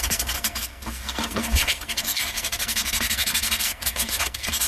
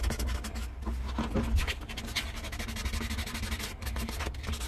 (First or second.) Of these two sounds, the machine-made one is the first